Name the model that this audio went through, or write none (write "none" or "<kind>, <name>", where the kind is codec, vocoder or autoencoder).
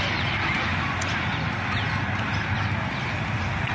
none